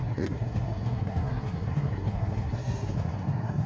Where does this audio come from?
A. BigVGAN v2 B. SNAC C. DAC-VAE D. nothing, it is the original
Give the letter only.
B